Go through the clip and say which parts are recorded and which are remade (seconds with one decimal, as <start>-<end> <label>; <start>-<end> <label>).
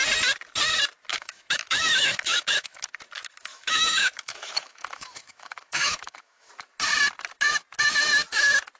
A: 0.0-1.1 recorded; 1.1-2.8 remade; 2.8-3.5 recorded; 3.5-6.5 remade; 6.5-8.8 recorded